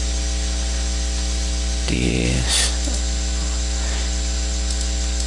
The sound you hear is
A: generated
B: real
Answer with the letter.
B